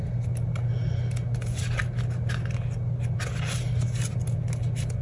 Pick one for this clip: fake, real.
real